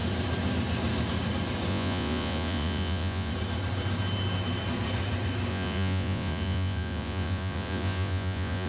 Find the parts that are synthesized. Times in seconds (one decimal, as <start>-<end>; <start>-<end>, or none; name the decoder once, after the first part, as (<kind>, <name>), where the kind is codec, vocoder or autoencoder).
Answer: 1.7-3.3 (vocoder, Vocos); 5.5-8.7